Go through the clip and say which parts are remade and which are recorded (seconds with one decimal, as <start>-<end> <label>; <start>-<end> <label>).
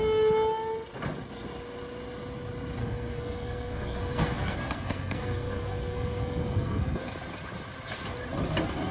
0.0-2.8 recorded; 2.8-7.0 remade; 7.0-8.9 recorded